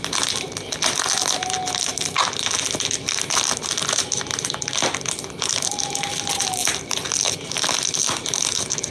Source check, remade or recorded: recorded